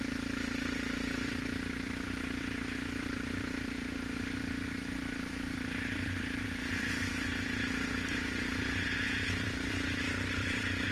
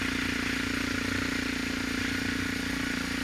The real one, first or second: second